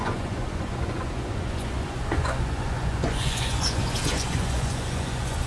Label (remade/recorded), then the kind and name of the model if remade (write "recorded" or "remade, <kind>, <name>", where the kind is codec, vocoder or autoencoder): remade, vocoder, Vocos